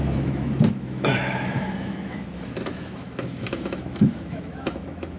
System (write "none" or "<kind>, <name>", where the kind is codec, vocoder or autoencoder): autoencoder, DAC-VAE